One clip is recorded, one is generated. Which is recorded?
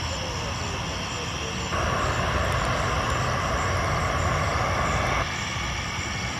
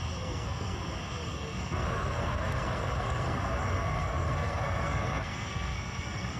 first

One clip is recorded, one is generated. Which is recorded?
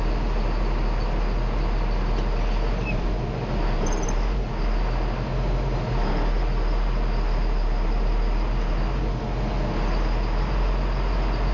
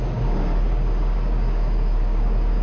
first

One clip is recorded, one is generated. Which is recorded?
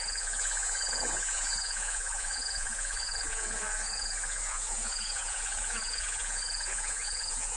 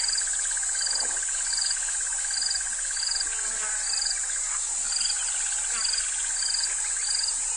second